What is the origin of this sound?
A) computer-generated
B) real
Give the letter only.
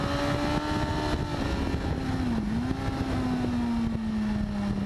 B